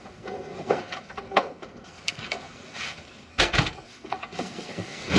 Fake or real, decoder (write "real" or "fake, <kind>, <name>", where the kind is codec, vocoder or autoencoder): fake, codec, SNAC